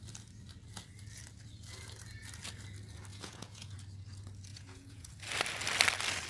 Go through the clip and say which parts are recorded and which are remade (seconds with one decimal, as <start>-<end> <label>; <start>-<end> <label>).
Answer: 0.0-3.1 recorded; 3.1-3.7 remade; 3.7-4.5 recorded; 4.5-5.1 remade; 5.1-6.3 recorded